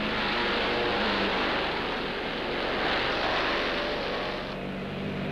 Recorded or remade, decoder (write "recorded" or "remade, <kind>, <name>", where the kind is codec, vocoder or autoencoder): recorded